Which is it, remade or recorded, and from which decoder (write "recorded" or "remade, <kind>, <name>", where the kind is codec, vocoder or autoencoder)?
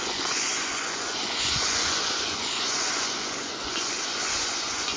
remade, vocoder, Vocos